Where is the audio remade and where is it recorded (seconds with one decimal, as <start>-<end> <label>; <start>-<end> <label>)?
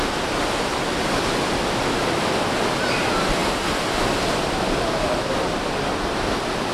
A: 0.0-6.7 recorded